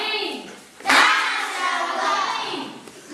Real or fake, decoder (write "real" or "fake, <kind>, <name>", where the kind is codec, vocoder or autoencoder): fake, vocoder, BigVGAN v2